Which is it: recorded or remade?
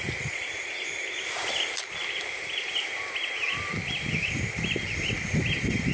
remade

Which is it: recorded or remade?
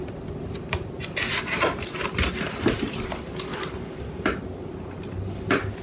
recorded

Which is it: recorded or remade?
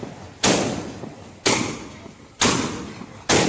recorded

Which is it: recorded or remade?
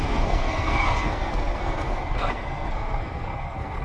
remade